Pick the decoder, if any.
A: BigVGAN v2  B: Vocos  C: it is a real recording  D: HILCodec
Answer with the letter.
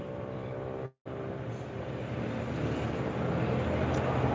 C